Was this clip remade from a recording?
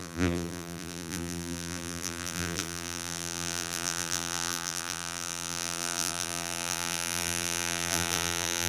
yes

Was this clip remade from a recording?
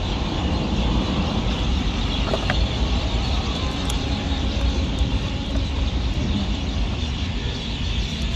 yes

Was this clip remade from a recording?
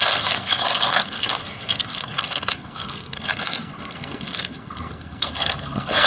yes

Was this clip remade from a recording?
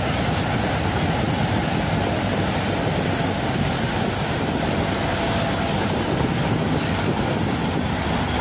no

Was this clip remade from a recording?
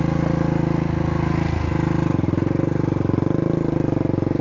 no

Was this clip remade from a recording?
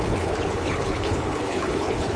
yes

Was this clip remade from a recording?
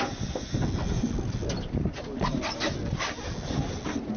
no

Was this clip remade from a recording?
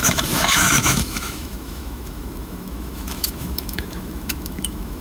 yes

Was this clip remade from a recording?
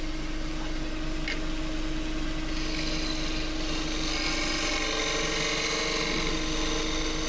no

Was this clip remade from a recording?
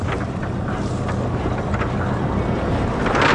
no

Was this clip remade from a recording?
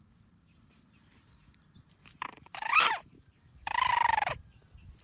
yes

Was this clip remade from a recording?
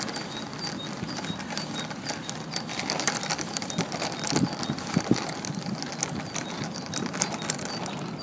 no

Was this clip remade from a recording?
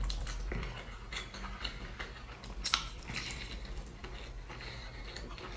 no